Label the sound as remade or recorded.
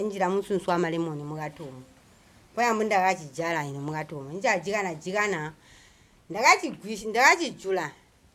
recorded